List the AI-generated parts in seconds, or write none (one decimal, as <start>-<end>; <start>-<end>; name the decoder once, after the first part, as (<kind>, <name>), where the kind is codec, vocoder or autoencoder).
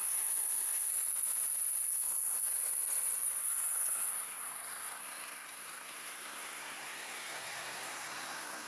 0.0-0.9 (codec, SNAC); 1.9-2.5; 3.4-8.7